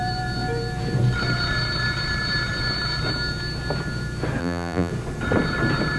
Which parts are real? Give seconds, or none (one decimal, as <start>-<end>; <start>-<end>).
0.0-4.4; 4.9-6.0